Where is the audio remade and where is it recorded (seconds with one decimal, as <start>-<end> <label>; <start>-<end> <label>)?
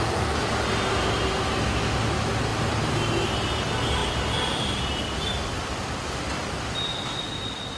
0.0-7.8 recorded